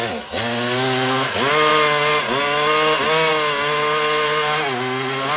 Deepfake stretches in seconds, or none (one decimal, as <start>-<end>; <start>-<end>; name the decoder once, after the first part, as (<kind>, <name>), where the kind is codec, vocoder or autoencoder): none